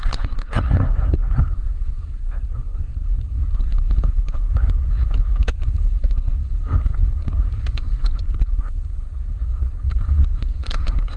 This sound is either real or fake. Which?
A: fake